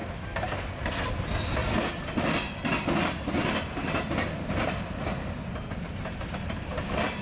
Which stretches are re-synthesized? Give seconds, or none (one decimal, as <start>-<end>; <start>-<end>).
none